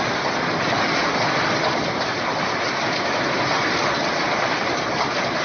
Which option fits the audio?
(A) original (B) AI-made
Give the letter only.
B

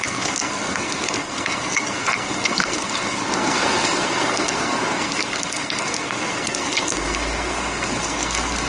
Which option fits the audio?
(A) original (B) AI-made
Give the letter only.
B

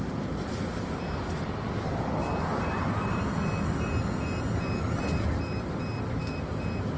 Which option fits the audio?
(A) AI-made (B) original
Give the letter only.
B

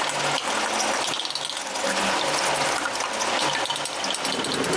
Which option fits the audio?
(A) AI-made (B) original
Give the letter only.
B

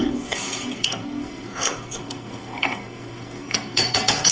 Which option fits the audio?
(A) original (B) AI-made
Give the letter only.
B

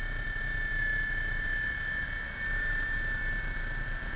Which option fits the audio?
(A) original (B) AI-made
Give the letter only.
A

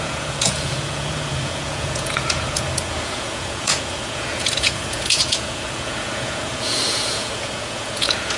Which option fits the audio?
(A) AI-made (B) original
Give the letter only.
A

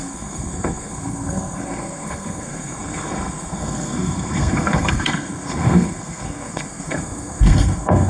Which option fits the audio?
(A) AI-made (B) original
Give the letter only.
A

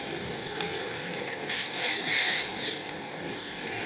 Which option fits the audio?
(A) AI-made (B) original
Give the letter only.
A